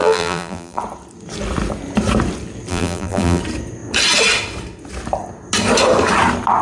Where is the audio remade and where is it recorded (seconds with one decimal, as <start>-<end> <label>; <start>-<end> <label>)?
0.0-0.8 remade; 0.8-2.7 recorded; 2.7-3.4 remade; 3.4-6.6 recorded